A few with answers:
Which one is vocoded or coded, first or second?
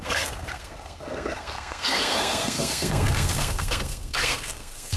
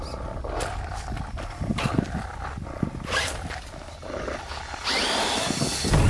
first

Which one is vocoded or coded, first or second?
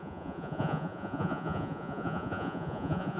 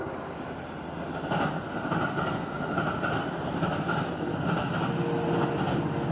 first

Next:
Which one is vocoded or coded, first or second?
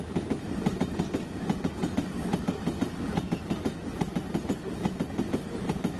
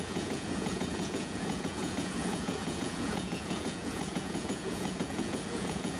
second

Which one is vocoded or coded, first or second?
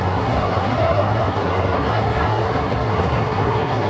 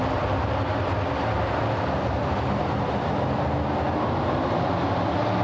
first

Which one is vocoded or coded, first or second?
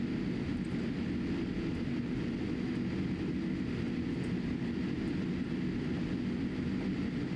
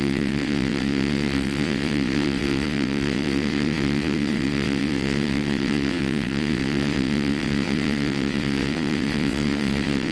second